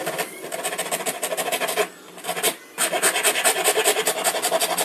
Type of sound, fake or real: real